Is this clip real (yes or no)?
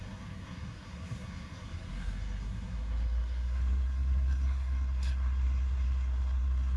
no